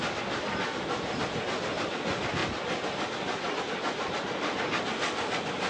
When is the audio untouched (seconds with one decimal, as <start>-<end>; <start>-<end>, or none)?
0.0-5.7